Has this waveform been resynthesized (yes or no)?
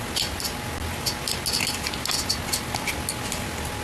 no